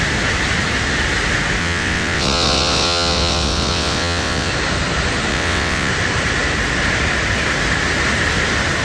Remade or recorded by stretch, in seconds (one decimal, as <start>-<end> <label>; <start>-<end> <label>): 0.0-1.6 recorded; 1.6-4.5 remade; 4.5-5.3 recorded; 5.3-5.9 remade; 5.9-8.8 recorded